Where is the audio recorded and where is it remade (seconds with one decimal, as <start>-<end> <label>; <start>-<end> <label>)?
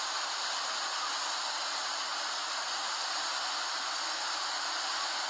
0.0-5.3 recorded